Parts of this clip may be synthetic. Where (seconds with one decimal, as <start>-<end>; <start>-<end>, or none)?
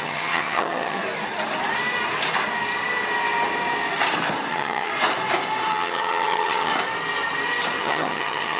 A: 0.0-1.0; 4.5-4.9; 5.7-6.7; 7.8-8.6